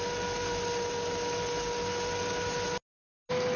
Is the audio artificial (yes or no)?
no